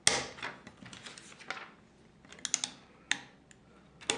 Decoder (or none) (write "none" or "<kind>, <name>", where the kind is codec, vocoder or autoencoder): none